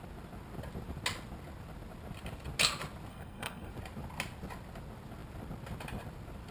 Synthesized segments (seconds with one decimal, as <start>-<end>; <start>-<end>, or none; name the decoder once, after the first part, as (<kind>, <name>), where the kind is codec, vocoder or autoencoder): 3.1-3.7 (codec, SNAC)